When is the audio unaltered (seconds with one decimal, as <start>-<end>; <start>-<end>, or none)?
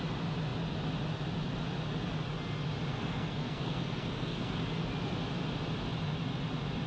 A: 0.0-2.9; 4.6-6.9